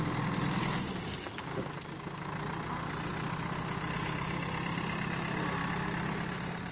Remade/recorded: recorded